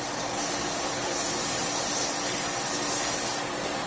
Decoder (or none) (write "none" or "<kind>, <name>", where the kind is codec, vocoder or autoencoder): none